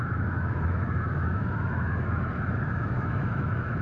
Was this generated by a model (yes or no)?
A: yes